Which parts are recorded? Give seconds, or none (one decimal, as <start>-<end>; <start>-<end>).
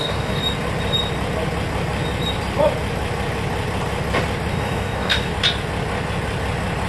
0.4-4.5; 5.3-6.9